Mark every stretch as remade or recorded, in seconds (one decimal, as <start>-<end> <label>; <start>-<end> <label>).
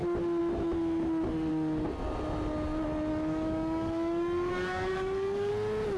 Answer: 0.0-3.1 recorded; 3.1-5.5 remade; 5.5-6.0 recorded